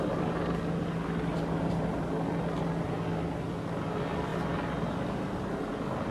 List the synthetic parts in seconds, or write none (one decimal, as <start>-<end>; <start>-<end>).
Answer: 1.3-2.1